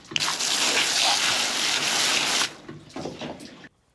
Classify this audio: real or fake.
real